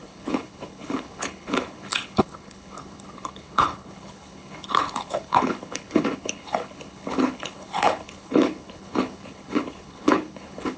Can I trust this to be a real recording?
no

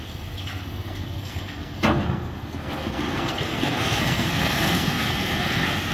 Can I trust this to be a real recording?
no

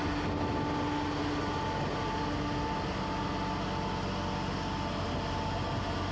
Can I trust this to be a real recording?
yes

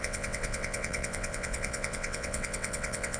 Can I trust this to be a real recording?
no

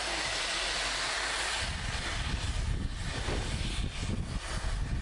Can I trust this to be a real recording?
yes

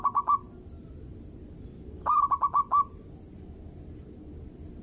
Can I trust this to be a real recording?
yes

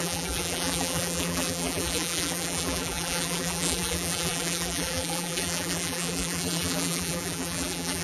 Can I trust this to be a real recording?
no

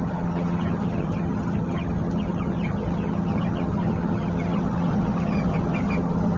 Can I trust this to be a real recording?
no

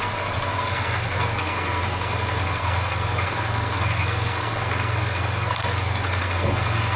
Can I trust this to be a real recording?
no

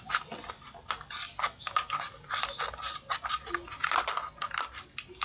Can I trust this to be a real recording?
yes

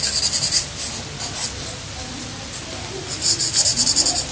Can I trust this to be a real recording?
yes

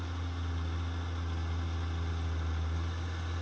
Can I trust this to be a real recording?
yes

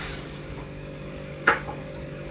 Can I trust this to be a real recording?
no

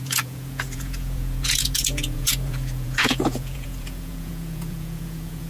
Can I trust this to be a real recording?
no